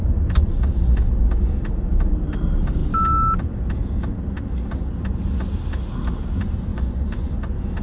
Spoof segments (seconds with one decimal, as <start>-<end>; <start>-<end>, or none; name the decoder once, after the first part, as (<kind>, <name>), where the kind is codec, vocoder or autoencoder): 6.7-7.3 (vocoder, Vocos)